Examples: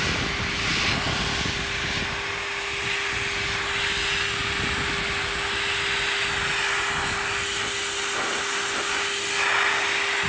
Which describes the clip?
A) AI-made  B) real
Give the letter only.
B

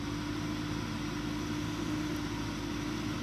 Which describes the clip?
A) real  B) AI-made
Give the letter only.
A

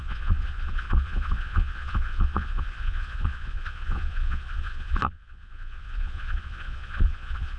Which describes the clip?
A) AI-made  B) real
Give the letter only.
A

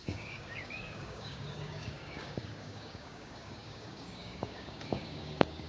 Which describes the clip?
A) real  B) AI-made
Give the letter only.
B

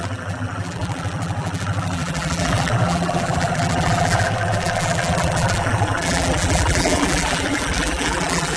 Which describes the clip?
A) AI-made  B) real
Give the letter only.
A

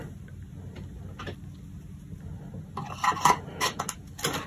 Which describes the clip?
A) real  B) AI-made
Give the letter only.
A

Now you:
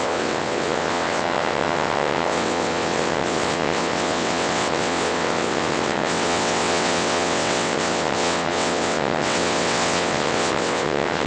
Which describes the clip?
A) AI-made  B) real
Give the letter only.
A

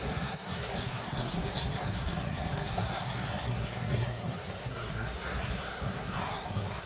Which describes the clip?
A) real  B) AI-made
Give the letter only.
B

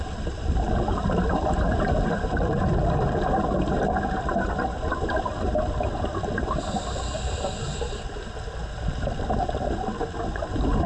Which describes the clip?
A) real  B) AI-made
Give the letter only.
B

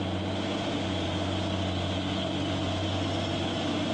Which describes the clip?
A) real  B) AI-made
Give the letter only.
A